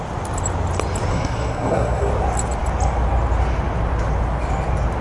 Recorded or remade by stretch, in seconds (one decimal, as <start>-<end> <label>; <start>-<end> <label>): 0.0-1.1 recorded; 1.1-2.1 remade; 2.1-5.0 recorded